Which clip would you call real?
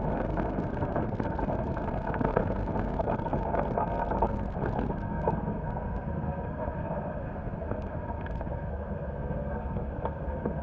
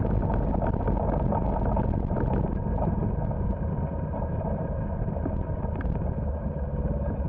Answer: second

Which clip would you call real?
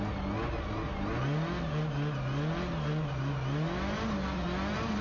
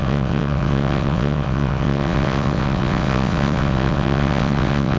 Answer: first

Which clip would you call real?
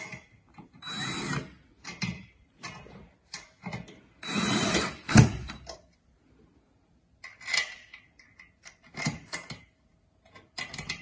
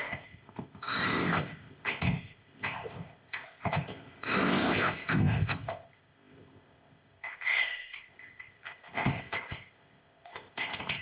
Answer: first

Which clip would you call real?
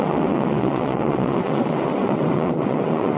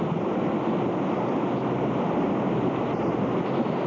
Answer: second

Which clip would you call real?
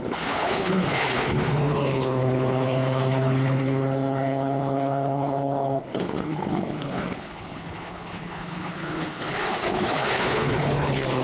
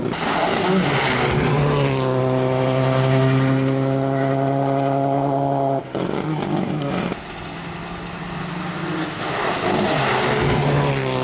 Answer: second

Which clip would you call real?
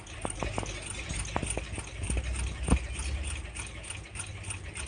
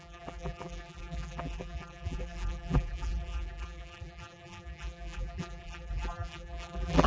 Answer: first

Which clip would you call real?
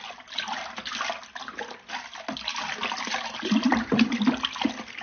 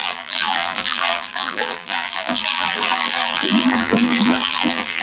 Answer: first